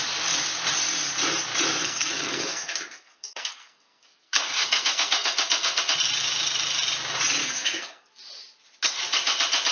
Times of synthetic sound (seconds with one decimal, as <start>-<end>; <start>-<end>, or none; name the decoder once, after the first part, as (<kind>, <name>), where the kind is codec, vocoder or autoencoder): 1.8-5.8 (codec, SNAC); 7.4-8.1